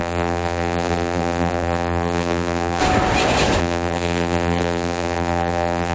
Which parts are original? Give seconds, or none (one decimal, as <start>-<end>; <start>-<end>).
2.8-3.6